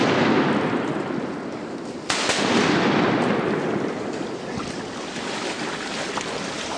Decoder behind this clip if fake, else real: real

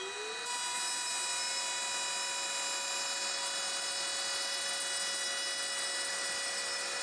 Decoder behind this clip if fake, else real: real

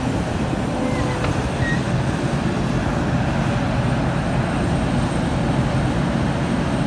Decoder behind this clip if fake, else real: real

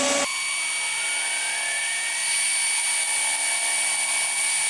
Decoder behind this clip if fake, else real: real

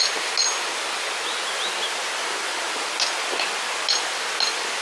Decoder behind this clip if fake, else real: real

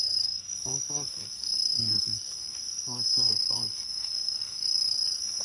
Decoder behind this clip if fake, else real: fake, codec, SNAC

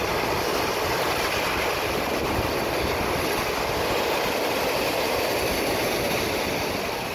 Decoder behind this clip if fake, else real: real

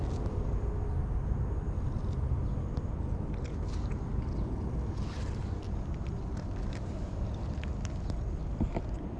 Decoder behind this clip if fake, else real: real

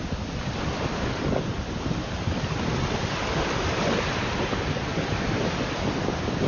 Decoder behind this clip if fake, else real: fake, vocoder, BigVGAN v2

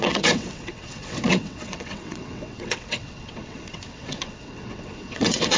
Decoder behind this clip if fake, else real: fake, vocoder, WaveNeXt